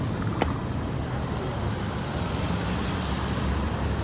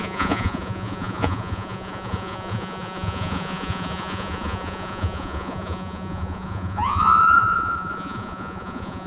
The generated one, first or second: second